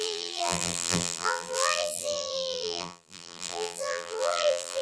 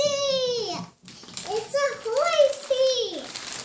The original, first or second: second